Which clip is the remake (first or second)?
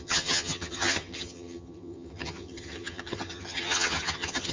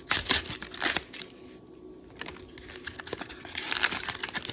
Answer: first